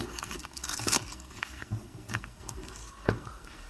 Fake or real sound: fake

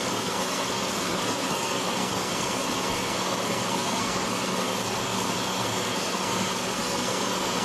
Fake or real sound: fake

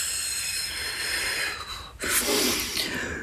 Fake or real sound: real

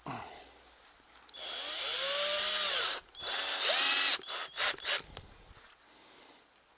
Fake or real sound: real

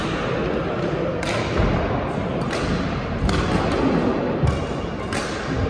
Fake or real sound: real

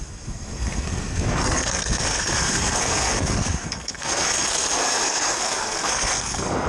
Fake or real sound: fake